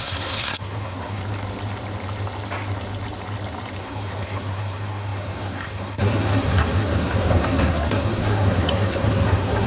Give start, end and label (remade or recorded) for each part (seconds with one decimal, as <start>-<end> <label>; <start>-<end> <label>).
0.0-1.2 remade; 1.2-3.8 recorded; 3.8-9.7 remade

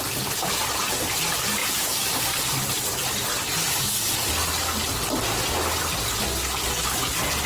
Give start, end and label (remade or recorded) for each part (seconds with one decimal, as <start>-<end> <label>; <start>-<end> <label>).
0.0-7.5 recorded